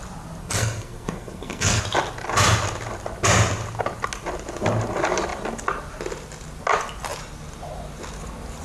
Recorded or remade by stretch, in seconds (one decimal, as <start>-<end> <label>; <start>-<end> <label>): 0.0-0.4 recorded; 0.4-1.8 remade; 1.8-8.6 recorded